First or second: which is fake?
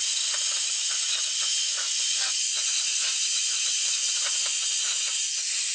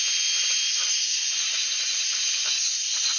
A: first